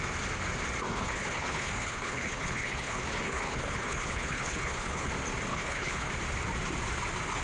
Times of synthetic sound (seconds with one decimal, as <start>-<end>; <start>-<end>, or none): 0.9-5.1; 5.5-6.1